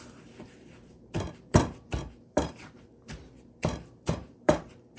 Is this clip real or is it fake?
fake